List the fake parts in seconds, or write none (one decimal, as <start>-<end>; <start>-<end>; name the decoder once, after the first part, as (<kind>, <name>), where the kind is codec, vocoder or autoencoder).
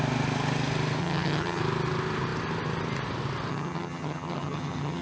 1.0-1.6 (vocoder, HiFi-GAN); 3.5-5.0